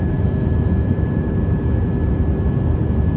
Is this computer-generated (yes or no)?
yes